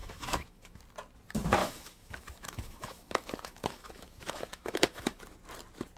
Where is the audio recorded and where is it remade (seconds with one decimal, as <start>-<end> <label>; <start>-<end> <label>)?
0.0-0.8 remade; 0.8-1.6 recorded; 1.6-5.2 remade; 5.2-6.0 recorded